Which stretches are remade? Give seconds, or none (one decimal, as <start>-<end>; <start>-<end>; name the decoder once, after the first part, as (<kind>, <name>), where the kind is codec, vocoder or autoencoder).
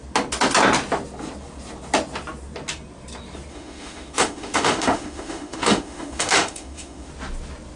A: 3.5-7.1 (autoencoder, DAC-VAE)